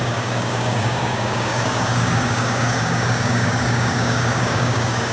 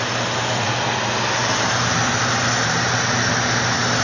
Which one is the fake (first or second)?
first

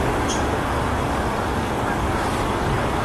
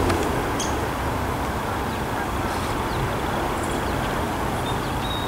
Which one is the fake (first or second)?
first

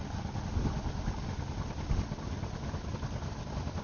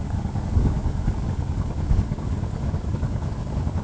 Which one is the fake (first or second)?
second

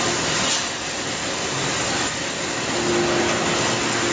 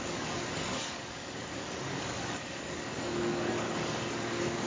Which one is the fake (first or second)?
second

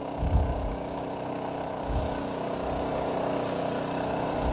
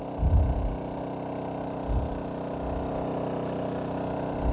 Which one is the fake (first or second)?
first